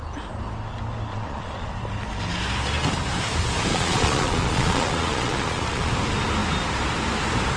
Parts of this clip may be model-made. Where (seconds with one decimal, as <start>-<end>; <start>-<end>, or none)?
1.1-1.7; 3.7-5.9